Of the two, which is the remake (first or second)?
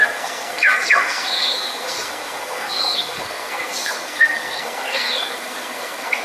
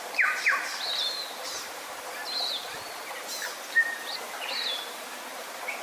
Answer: first